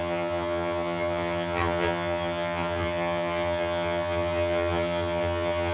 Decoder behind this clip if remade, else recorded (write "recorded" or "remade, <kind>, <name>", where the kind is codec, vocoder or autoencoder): remade, vocoder, HiFi-GAN